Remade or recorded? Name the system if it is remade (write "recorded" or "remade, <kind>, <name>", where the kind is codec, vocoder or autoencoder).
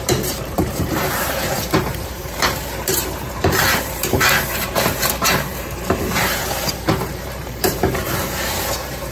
remade, vocoder, BigVGAN v2